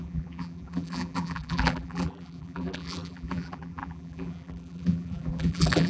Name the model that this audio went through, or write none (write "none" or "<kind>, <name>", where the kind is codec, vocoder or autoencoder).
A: vocoder, BigVGAN v2